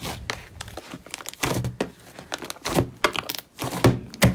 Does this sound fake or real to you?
real